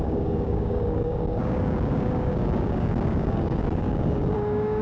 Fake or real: fake